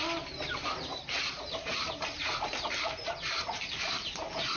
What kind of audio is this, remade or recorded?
recorded